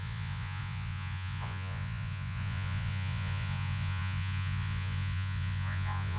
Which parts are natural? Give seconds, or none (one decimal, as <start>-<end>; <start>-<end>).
none

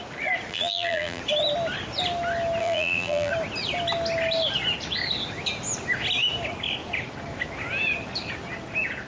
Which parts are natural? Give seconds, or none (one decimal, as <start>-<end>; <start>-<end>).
0.0-0.5; 1.2-2.6; 3.3-9.1

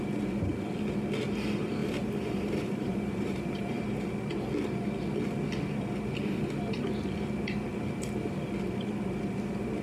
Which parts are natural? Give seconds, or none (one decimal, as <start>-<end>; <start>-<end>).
0.0-1.8; 3.8-9.8

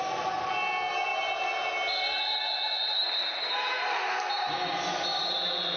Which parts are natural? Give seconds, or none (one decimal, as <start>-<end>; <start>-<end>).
0.0-5.8

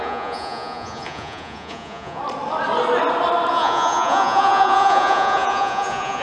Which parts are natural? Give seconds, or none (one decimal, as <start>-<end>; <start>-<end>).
2.2-3.5

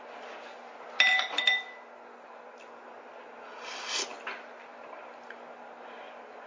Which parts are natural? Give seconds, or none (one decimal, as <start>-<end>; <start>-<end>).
0.0-6.5